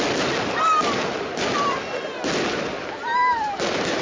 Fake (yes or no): no